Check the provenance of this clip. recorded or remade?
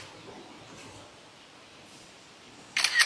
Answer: recorded